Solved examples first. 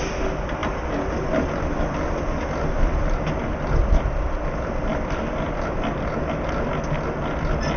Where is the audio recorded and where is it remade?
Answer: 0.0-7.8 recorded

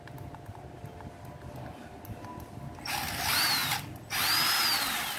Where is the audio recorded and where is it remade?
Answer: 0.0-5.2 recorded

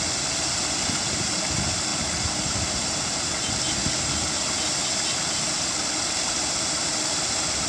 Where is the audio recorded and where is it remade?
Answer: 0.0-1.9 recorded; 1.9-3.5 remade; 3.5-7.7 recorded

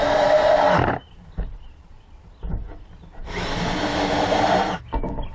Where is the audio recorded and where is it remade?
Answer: 0.0-3.2 recorded; 3.2-4.7 remade; 4.7-5.3 recorded